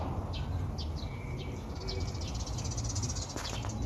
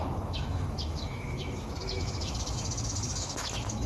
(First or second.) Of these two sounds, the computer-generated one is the second